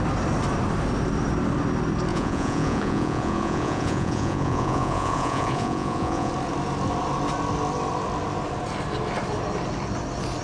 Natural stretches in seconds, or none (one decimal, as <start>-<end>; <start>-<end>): 0.0-2.1; 6.3-10.4